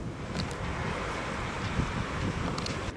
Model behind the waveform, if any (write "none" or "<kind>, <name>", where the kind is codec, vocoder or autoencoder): none